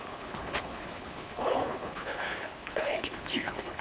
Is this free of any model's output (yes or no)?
no